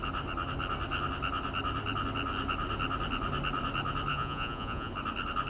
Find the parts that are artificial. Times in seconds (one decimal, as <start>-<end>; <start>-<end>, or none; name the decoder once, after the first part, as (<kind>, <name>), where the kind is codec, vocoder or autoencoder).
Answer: 4.1-4.9 (vocoder, Vocos)